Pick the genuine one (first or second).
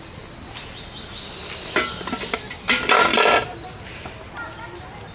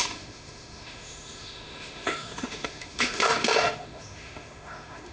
first